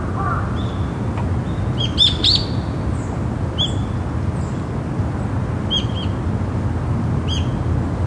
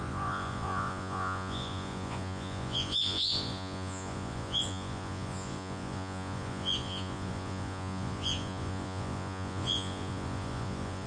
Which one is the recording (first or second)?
first